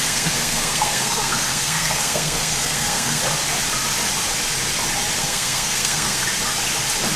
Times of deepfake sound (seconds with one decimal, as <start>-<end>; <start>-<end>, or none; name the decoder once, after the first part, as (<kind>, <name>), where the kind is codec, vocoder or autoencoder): 0.0-3.2 (codec, SNAC); 5.2-6.2